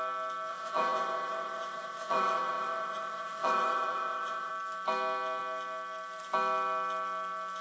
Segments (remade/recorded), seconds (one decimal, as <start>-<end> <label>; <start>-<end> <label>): 0.0-0.5 recorded; 0.5-4.5 remade; 4.5-7.6 recorded